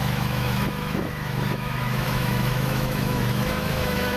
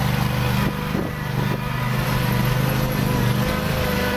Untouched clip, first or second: second